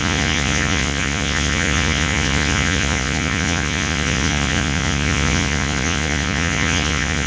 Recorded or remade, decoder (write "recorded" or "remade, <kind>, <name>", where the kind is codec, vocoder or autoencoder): remade, vocoder, Vocos